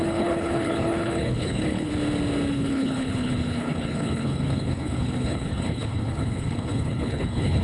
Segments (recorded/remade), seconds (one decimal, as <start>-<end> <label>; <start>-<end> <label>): 0.0-1.9 remade; 1.9-2.5 recorded; 2.5-7.6 remade